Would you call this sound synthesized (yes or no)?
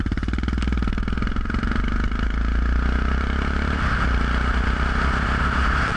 no